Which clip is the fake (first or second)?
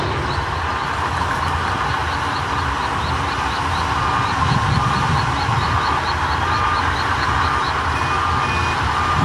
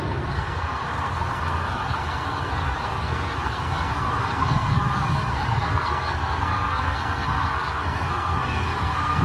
second